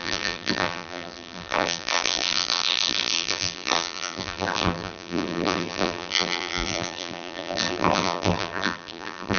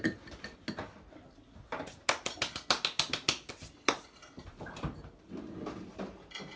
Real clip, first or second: second